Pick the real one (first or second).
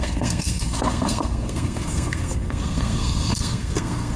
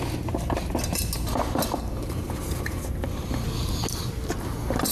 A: second